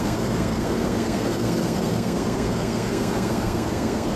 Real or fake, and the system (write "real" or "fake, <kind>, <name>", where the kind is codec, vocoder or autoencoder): fake, codec, SNAC